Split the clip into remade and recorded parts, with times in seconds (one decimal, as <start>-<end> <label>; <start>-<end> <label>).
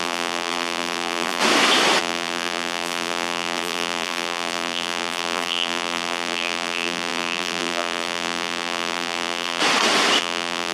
0.0-1.4 remade; 1.4-2.0 recorded; 2.0-9.6 remade; 9.6-10.2 recorded; 10.2-10.7 remade